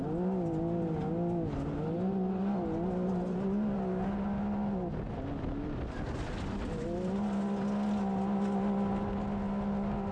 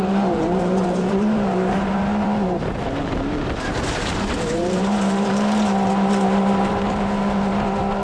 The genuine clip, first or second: first